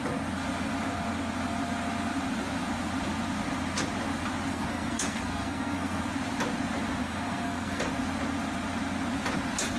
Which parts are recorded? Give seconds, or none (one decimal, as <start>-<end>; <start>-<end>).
0.0-4.5; 6.0-7.0; 7.8-9.8

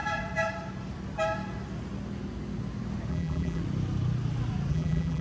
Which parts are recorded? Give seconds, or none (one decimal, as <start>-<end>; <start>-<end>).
0.0-3.1; 3.6-4.7

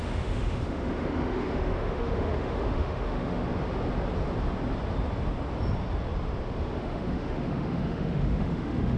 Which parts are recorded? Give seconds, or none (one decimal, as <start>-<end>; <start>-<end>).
3.4-6.6

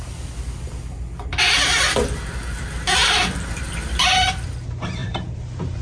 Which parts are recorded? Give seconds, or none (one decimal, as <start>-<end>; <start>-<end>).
0.0-5.0